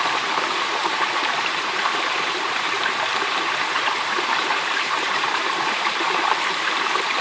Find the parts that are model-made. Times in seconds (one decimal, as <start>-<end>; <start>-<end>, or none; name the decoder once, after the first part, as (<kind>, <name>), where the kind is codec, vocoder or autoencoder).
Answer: 0.0-7.2 (vocoder, BigVGAN v2)